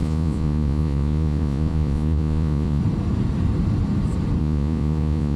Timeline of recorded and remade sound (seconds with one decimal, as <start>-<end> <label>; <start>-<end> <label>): 0.0-2.8 remade; 2.8-4.4 recorded; 4.4-5.4 remade